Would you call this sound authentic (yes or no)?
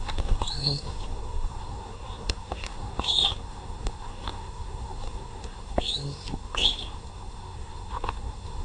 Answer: no